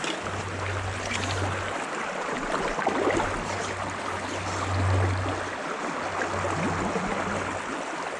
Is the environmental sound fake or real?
real